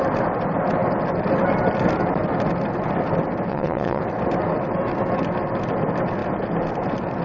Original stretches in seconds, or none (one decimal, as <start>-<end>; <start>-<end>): 0.0-3.5; 4.0-7.2

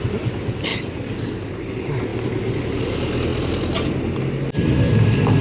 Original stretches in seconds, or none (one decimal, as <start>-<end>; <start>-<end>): 0.0-5.4

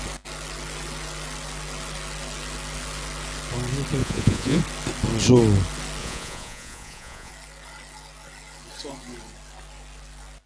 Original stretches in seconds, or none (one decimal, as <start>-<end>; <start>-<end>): 0.0-4.0; 4.6-6.0; 7.3-10.5